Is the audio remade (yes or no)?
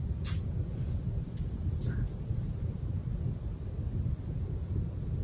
no